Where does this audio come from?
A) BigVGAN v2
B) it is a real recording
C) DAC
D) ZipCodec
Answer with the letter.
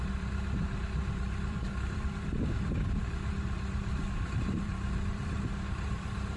A